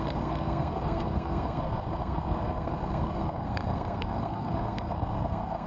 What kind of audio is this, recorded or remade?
remade